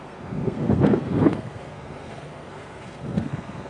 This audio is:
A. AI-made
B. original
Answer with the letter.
A